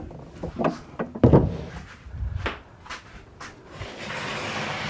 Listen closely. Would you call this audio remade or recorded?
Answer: remade